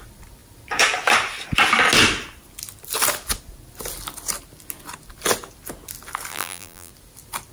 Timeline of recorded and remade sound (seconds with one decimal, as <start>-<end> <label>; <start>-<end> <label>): 0.0-6.3 recorded; 6.3-6.9 remade; 6.9-7.5 recorded